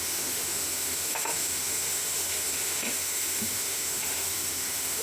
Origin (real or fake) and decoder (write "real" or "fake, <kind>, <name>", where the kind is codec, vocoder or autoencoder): fake, autoencoder, DAC-VAE